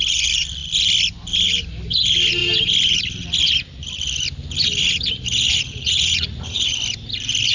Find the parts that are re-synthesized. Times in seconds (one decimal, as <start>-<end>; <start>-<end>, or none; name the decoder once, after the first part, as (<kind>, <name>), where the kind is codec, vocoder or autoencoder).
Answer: 5.5-6.7 (vocoder, Vocos)